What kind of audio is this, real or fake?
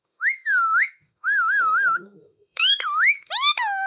fake